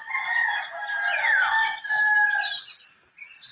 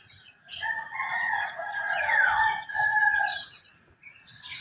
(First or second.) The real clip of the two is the first